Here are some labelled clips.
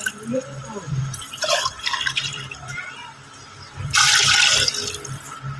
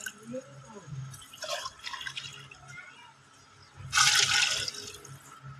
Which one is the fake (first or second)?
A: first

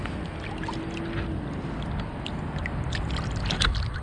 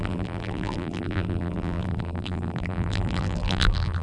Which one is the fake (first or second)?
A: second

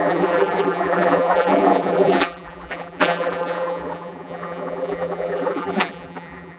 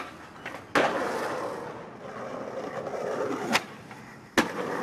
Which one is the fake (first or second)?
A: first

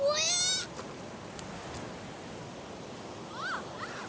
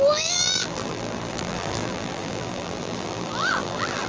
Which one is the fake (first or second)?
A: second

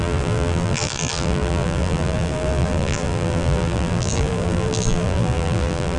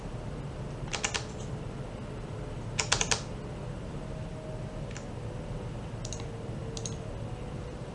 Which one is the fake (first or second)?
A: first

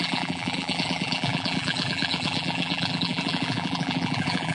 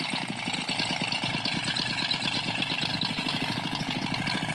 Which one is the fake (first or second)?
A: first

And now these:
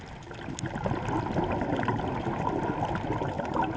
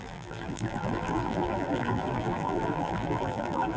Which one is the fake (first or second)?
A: second